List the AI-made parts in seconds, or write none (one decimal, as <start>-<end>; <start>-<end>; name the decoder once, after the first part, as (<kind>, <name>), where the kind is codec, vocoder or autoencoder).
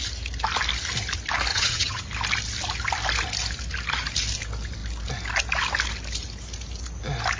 1.5-2.0 (vocoder, HiFi-GAN)